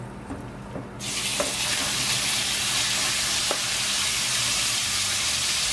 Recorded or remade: recorded